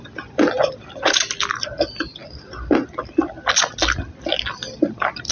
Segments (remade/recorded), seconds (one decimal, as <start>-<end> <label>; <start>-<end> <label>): 0.0-5.3 recorded